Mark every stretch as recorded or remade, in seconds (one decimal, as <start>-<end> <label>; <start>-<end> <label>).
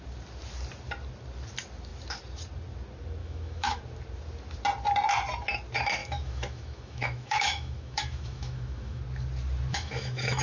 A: 0.0-3.2 recorded; 3.2-3.8 remade; 3.8-6.0 recorded; 6.0-9.0 remade; 9.0-9.7 recorded; 9.7-10.4 remade